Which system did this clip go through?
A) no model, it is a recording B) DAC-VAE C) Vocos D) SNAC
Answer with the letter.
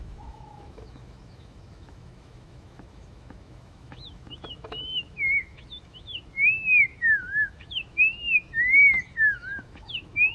B